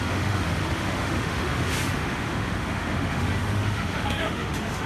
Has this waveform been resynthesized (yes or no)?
yes